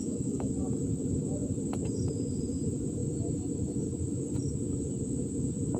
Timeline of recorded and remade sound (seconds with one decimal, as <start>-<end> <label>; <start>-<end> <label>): 0.0-0.5 remade; 0.5-5.8 recorded